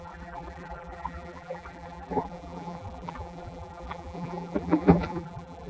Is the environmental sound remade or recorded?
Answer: remade